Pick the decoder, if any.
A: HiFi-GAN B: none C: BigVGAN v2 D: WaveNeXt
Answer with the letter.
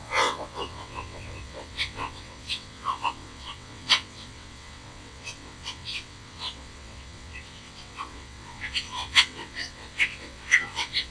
D